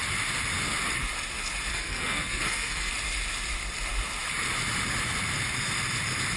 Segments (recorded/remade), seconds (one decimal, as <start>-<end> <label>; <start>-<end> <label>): 0.0-1.7 recorded; 1.7-2.9 remade; 2.9-6.4 recorded